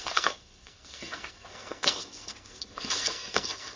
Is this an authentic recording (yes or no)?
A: no